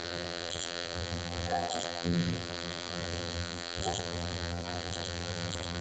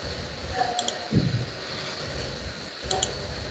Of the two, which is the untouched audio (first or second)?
second